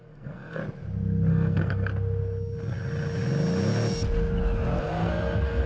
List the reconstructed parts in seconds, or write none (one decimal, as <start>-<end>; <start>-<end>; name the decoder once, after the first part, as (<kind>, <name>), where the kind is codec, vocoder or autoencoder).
0.0-0.6 (codec, SNAC); 1.3-1.9; 4.8-5.7